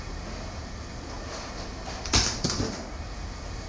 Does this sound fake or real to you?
real